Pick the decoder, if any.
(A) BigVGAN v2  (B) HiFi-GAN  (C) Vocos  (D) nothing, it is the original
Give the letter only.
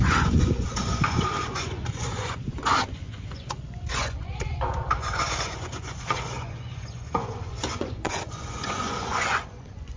C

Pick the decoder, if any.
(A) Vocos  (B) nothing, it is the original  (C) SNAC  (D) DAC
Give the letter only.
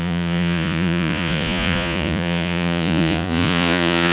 A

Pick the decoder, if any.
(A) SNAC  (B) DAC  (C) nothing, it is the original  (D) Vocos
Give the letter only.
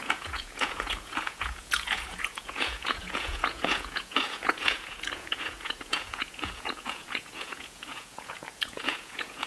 D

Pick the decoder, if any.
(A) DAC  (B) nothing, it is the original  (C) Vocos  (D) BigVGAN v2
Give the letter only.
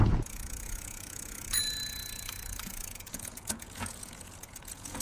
C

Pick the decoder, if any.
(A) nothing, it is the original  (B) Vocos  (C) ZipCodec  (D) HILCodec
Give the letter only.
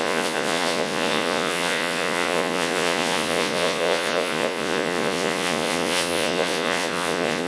B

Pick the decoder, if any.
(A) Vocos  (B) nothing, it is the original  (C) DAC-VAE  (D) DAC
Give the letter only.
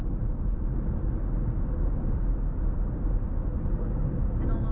B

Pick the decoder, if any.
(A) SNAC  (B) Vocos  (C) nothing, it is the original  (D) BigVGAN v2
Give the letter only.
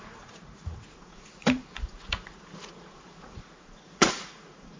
B